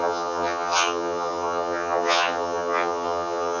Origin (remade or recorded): remade